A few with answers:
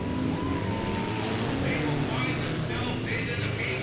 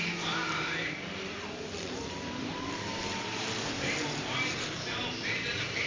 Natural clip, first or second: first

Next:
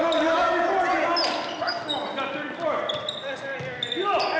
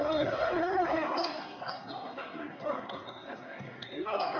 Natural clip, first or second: first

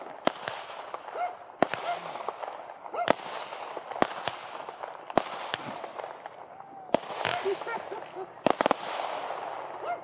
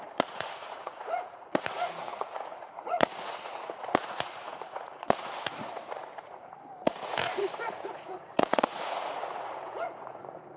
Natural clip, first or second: first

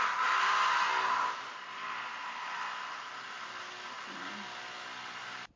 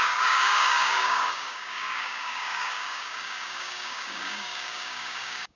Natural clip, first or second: first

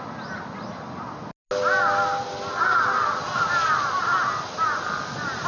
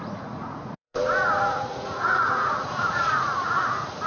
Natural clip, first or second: first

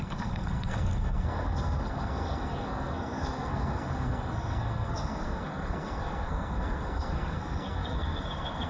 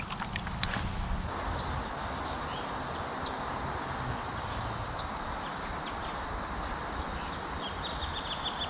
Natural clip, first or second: second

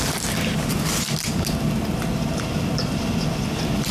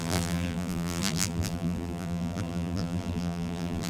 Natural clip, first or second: first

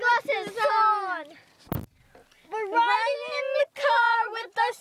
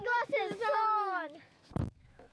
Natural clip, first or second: first